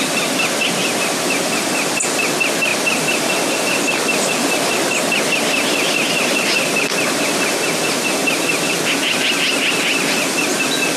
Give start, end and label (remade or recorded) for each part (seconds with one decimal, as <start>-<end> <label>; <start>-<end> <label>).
0.0-11.0 recorded